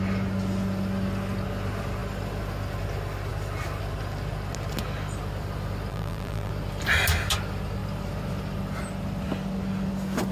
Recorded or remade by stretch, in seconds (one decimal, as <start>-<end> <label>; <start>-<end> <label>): 0.0-5.9 recorded; 5.9-6.5 remade; 6.5-10.3 recorded